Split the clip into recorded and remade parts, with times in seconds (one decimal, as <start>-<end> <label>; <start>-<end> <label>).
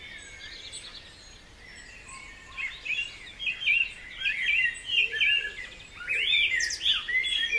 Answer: 0.0-7.6 recorded